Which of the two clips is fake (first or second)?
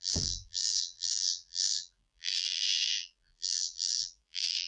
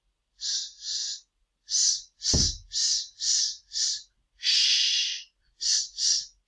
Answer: first